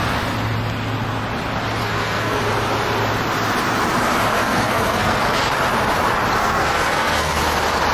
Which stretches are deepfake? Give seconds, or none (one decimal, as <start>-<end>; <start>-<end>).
1.8-2.4; 4.3-5.2; 6.4-7.4